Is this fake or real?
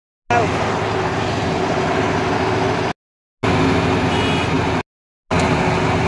real